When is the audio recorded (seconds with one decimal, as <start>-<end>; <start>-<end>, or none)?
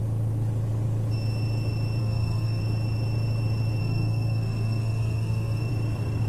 0.0-2.0; 2.6-3.8; 5.7-6.3